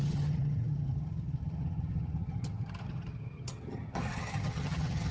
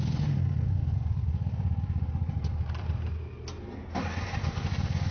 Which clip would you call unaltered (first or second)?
second